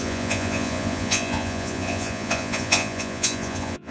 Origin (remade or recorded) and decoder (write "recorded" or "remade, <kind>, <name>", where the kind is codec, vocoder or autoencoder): remade, vocoder, Vocos